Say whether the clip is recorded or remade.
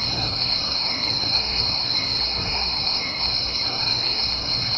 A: remade